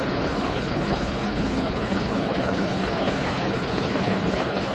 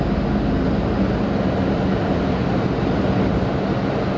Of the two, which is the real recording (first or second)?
second